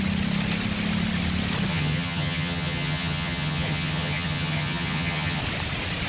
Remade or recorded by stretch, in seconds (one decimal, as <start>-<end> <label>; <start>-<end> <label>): 0.0-1.7 recorded; 1.7-5.4 remade; 5.4-6.1 recorded